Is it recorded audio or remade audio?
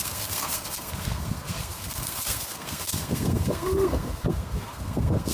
remade